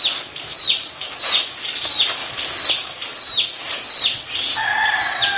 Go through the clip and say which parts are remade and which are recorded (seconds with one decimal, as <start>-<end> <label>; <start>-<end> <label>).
0.0-0.6 recorded; 0.6-1.5 remade; 1.5-5.4 recorded